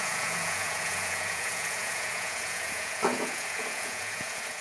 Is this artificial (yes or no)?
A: yes